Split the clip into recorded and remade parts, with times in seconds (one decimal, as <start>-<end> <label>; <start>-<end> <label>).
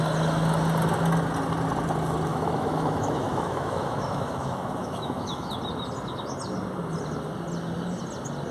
0.0-2.3 recorded; 2.3-5.5 remade; 5.5-8.5 recorded